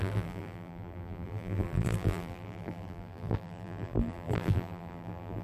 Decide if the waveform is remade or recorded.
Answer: remade